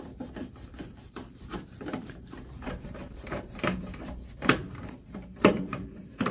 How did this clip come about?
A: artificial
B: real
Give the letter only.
A